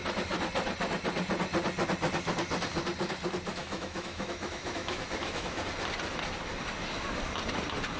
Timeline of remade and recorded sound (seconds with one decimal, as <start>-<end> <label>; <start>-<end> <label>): 0.0-3.6 recorded; 3.6-5.6 remade; 5.6-8.0 recorded